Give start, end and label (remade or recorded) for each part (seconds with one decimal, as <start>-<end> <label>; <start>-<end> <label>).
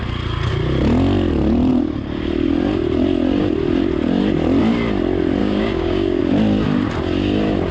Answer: 0.0-5.4 recorded; 5.4-6.2 remade; 6.2-7.7 recorded